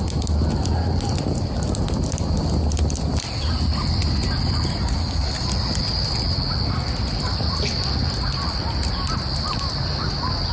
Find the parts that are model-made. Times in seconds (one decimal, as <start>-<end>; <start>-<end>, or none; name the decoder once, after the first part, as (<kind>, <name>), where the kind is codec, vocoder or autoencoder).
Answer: none